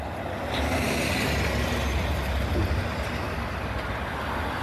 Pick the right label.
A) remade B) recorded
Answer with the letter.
B